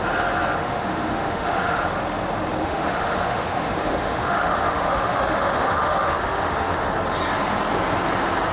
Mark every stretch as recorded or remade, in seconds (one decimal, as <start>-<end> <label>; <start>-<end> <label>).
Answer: 0.0-0.6 recorded; 0.6-1.8 remade; 1.8-2.6 recorded; 2.6-6.9 remade; 6.9-8.5 recorded